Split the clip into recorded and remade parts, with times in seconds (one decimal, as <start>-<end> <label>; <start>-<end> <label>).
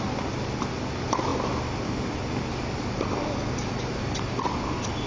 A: 0.0-5.1 recorded